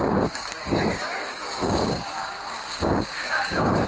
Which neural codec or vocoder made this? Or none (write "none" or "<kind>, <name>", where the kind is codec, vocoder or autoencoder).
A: codec, DAC